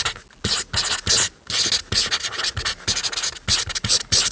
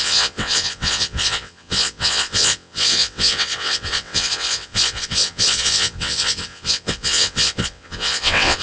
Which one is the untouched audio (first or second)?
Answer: first